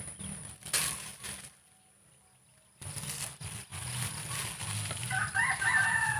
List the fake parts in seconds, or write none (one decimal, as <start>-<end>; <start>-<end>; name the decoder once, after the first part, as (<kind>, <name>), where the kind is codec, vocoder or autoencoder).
none